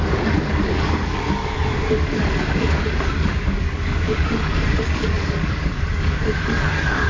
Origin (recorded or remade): remade